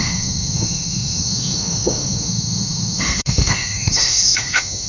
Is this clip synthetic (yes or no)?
yes